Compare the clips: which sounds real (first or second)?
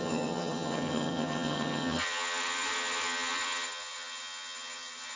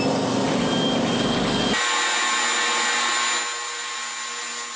second